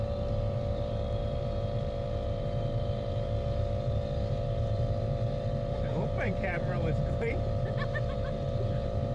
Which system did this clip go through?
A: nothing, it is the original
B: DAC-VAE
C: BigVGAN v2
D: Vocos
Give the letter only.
C